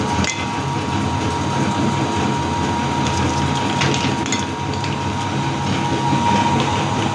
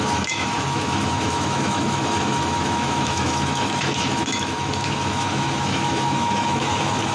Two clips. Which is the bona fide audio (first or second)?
first